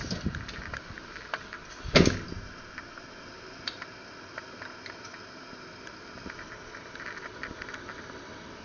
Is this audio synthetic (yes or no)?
no